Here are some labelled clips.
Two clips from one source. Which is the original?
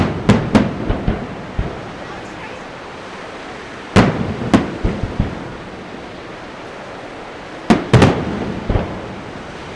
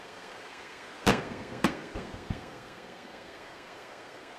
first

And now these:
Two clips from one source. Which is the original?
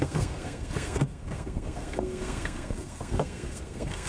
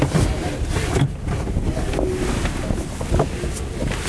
second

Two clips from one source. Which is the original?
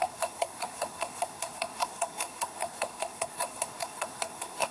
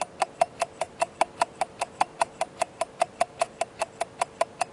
second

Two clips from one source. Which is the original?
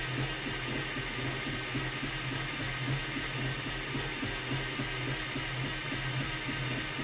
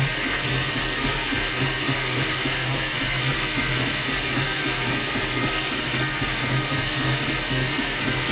first